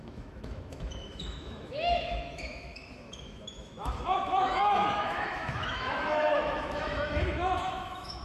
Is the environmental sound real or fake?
fake